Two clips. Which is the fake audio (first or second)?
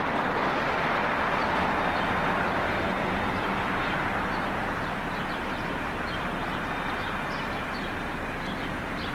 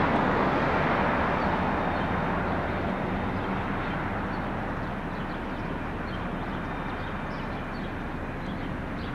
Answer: first